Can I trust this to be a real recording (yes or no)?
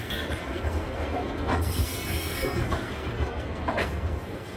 no